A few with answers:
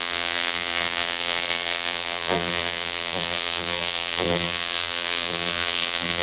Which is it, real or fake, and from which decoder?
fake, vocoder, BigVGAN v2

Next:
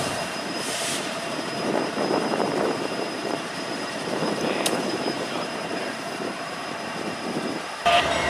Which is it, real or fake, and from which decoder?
fake, vocoder, BigVGAN v2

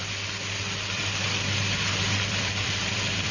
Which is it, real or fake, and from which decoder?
fake, vocoder, BigVGAN v2